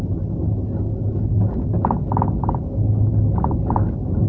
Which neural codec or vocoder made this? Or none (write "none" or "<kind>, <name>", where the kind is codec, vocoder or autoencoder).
none